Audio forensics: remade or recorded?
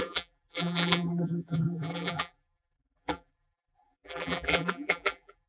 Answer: remade